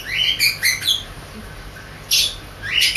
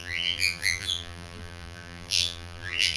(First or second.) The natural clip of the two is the first